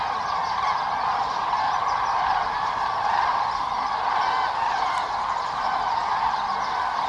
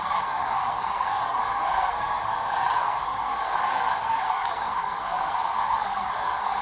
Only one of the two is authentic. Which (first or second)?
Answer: first